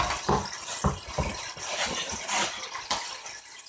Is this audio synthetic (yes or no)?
no